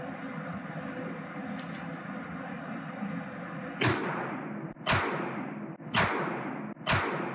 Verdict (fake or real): real